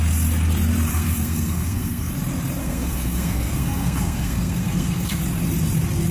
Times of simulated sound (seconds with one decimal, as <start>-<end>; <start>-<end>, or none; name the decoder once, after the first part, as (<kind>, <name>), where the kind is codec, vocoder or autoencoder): 0.9-2.1 (codec, SNAC); 2.6-5.2